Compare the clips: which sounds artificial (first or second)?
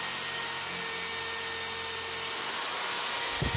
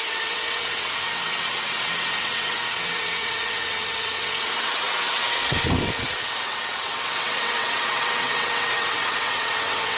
second